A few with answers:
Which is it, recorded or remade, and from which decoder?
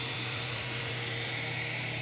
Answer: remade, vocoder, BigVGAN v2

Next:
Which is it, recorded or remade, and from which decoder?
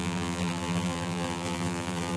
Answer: remade, vocoder, BigVGAN v2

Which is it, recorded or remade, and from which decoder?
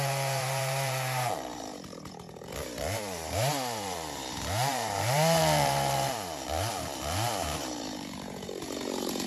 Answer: remade, vocoder, BigVGAN v2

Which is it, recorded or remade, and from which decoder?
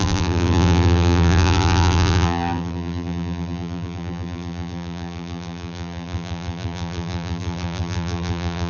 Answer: remade, vocoder, BigVGAN v2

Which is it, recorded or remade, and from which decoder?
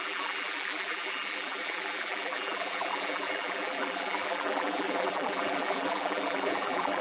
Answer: remade, vocoder, BigVGAN v2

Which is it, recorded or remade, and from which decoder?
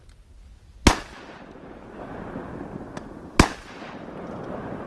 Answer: recorded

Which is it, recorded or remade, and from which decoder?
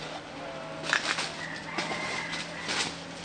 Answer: recorded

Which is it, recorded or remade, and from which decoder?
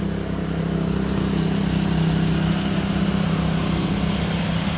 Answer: recorded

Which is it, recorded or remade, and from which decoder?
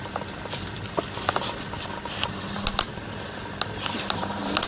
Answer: recorded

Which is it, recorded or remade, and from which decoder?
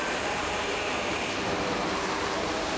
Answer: remade, vocoder, BigVGAN v2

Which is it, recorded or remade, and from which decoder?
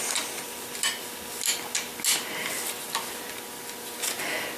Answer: recorded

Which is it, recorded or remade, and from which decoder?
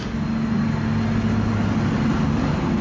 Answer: recorded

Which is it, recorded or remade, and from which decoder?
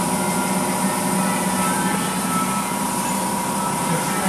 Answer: recorded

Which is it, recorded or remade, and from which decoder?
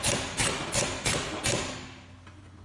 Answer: recorded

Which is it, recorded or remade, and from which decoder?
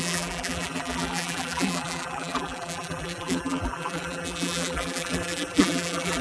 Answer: remade, vocoder, BigVGAN v2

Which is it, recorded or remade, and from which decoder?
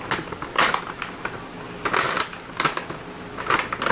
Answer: recorded